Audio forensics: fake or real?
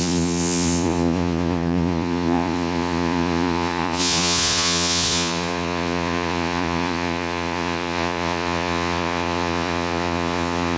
fake